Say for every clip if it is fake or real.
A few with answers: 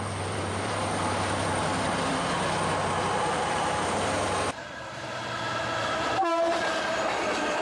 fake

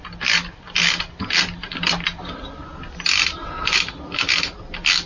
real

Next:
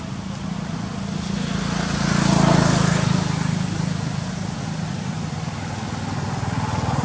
real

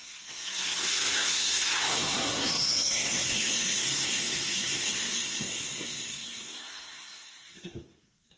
fake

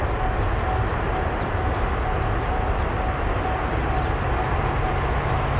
real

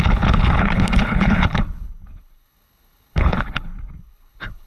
fake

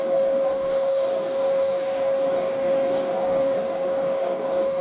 fake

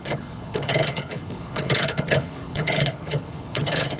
fake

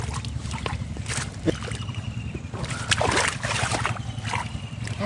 real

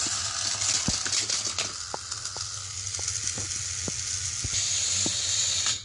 real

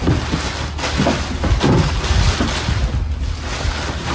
real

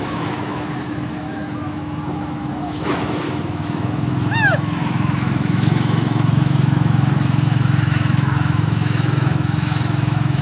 fake